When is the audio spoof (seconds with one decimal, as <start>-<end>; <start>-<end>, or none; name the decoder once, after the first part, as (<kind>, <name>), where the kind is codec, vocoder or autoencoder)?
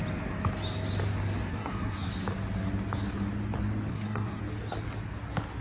1.5-2.1 (codec, SNAC); 3.9-4.4